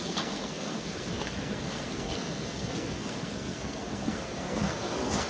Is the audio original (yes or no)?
no